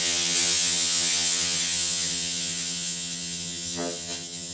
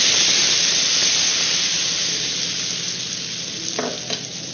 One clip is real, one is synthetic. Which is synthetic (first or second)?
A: first